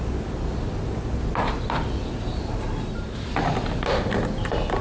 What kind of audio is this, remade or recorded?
recorded